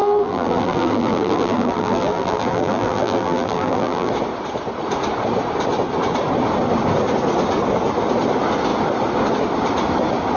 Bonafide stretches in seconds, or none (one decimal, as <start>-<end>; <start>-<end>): 4.1-10.4